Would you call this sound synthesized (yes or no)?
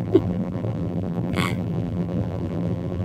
yes